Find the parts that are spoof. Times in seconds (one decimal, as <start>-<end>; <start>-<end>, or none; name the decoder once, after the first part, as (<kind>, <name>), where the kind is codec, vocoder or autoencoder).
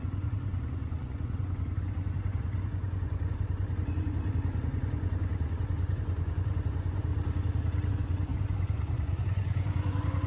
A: 0.0-7.1 (vocoder, Vocos); 7.9-10.3